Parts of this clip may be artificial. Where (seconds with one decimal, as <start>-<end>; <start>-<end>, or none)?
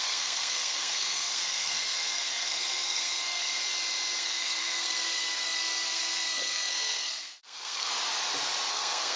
0.0-3.6; 4.2-7.9; 8.7-9.2